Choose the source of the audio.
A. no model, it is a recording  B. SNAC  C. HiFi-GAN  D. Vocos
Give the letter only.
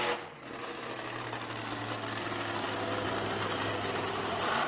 A